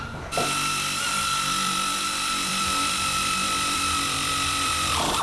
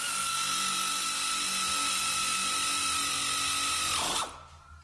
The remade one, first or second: first